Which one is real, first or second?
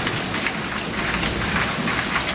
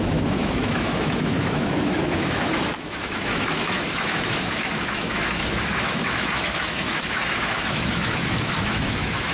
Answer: first